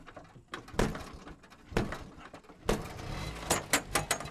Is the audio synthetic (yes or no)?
no